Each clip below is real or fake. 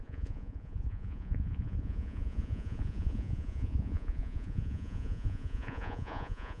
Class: fake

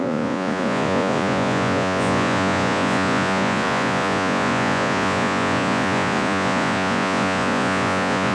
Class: fake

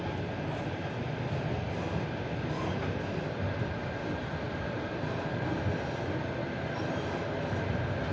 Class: real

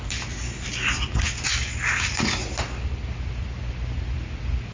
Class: real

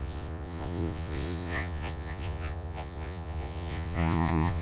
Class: fake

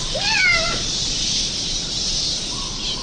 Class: real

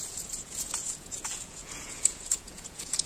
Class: fake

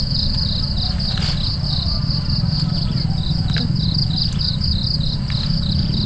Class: real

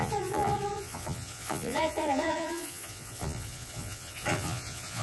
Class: fake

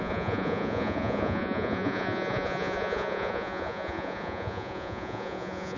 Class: fake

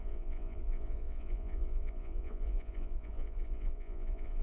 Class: fake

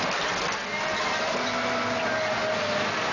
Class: real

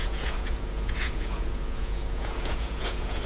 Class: fake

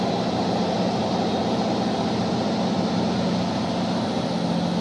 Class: real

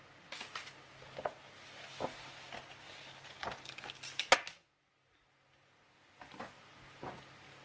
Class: real